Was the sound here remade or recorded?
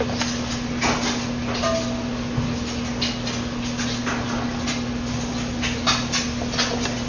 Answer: recorded